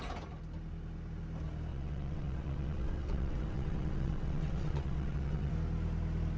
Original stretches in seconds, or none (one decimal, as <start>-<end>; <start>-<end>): 0.0-1.7; 5.5-6.4